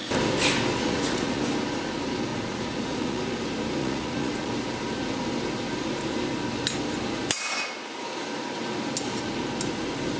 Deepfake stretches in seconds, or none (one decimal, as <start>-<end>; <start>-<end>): 0.8-1.4; 2.3-3.2; 3.8-4.5